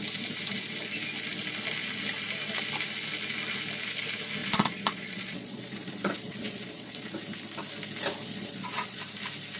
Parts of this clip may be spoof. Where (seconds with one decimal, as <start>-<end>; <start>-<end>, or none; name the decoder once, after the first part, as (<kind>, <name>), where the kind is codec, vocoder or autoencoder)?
4.4-7.1 (vocoder, Vocos); 8.2-9.0